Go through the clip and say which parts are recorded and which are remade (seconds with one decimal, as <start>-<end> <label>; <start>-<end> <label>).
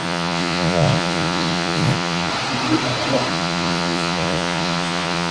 0.0-2.3 remade; 2.3-3.3 recorded; 3.3-5.3 remade